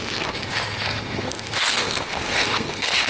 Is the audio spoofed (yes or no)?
yes